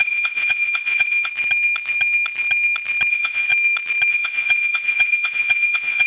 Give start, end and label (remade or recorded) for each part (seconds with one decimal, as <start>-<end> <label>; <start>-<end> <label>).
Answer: 0.0-1.3 remade; 1.3-3.1 recorded; 3.1-3.5 remade; 3.5-4.1 recorded; 4.1-6.1 remade